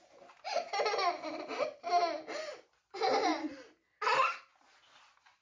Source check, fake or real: real